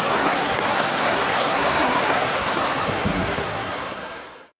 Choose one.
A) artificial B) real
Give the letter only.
A